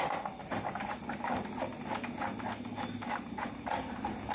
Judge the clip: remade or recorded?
recorded